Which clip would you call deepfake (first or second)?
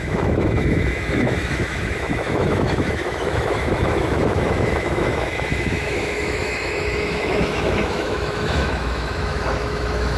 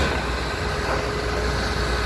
first